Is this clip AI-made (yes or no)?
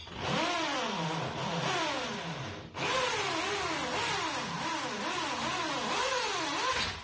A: no